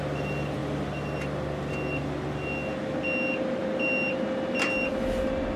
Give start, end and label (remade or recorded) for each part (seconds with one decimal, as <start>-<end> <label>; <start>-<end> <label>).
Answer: 0.0-5.6 recorded